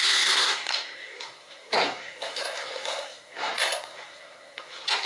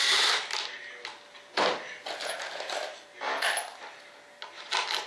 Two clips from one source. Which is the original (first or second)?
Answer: second